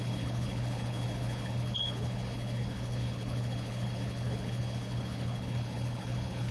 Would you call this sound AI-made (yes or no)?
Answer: yes